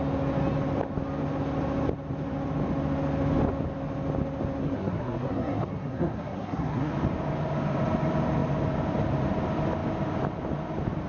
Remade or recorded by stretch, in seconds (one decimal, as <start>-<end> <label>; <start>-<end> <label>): 0.0-4.6 recorded; 4.6-6.9 remade; 6.9-11.1 recorded